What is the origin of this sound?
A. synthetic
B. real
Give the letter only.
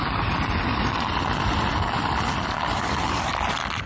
B